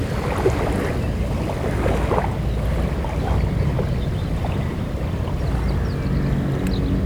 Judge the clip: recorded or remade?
recorded